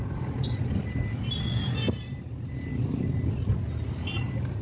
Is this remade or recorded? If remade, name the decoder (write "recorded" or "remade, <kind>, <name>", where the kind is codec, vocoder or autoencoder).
recorded